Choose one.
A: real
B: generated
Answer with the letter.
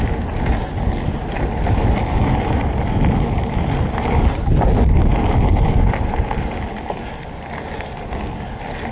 A